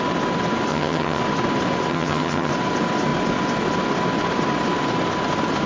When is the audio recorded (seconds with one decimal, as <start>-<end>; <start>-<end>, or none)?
0.0-0.7; 1.2-1.9; 2.5-5.7